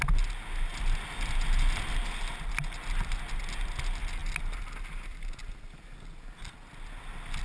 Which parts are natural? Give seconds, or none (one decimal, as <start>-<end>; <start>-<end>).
0.0-7.4